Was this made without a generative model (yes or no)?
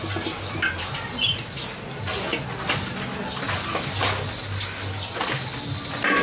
yes